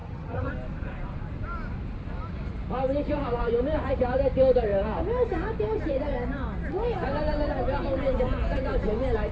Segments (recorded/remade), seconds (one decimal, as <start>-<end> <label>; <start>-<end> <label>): 0.0-0.5 remade; 0.5-9.3 recorded